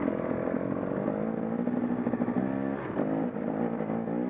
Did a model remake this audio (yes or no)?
no